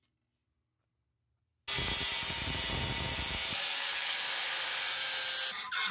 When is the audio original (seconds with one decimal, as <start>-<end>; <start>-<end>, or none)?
0.0-3.5; 4.4-5.9